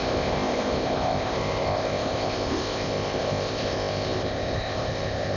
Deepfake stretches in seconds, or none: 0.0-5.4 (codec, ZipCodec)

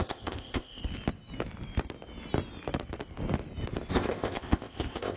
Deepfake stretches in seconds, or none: 0.0-0.8 (codec, ZipCodec); 3.9-5.2